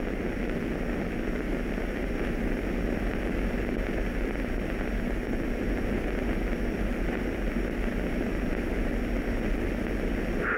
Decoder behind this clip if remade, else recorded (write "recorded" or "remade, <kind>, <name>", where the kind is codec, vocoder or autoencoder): recorded